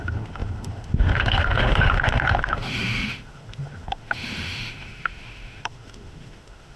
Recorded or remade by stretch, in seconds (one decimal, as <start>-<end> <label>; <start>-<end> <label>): 0.0-6.8 remade